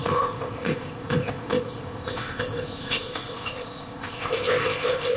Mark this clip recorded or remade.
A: remade